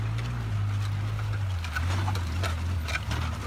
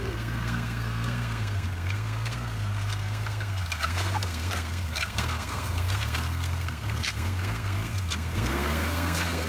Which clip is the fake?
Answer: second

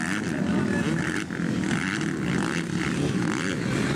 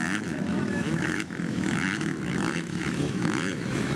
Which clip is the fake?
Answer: second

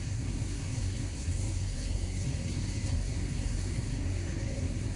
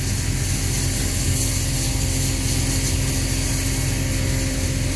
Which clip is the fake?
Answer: first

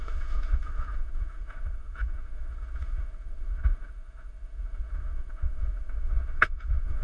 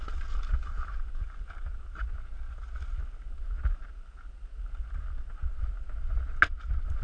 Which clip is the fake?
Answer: first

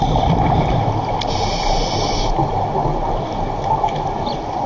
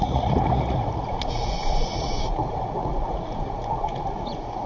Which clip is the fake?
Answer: second